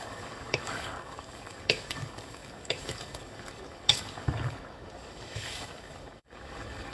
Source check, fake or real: fake